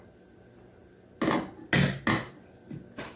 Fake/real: real